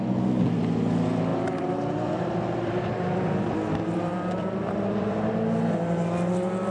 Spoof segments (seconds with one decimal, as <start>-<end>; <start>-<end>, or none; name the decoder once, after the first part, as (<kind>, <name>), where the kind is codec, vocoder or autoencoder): 1.3-5.3 (vocoder, BigVGAN v2)